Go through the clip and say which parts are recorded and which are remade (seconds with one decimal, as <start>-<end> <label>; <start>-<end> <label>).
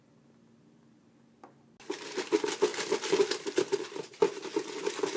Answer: 0.0-5.2 recorded